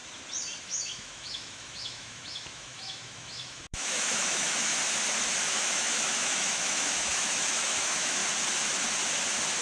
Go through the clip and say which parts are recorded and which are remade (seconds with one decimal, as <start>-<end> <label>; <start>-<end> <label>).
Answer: 0.0-0.6 recorded; 0.6-4.7 remade; 4.7-5.4 recorded; 5.4-8.2 remade; 8.2-9.6 recorded